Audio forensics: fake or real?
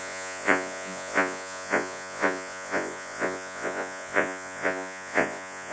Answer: fake